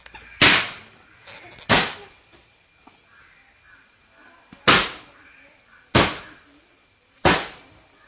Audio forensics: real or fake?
real